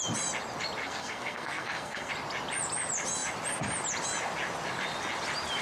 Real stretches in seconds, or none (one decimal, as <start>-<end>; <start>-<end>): 0.0-0.8; 2.1-5.6